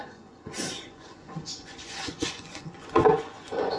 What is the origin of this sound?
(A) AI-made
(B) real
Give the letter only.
A